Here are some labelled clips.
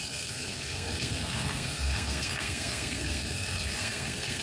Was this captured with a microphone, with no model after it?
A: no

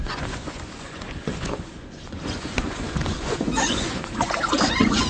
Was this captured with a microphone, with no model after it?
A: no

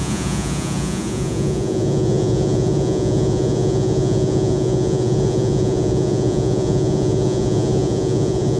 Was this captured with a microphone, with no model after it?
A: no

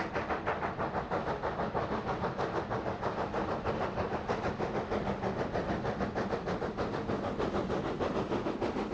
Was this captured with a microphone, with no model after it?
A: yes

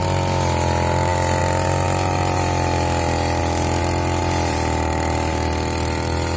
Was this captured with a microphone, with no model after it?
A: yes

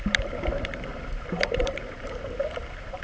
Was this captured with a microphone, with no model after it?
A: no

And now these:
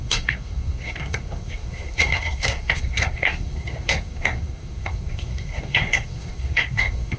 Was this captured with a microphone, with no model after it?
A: no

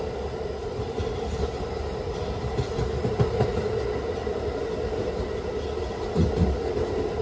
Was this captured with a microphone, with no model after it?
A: yes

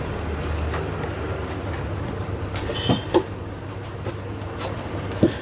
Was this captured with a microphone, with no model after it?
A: yes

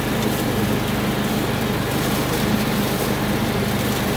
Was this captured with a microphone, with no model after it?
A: yes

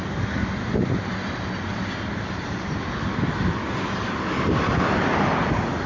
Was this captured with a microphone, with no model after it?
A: yes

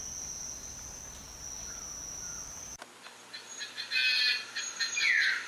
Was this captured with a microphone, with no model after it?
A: yes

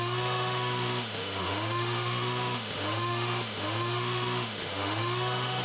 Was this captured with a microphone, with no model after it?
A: no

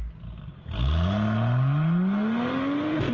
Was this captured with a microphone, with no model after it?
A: yes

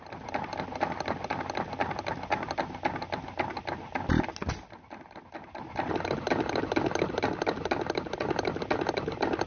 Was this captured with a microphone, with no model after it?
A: yes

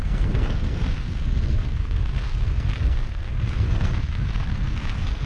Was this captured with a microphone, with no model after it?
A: no